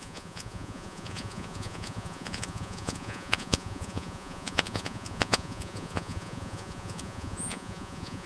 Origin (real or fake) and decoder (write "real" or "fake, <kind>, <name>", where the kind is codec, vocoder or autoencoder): fake, vocoder, Vocos